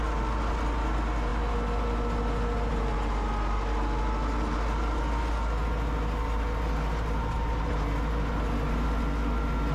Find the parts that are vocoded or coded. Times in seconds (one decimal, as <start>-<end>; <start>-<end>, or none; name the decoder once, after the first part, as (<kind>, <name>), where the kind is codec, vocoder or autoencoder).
none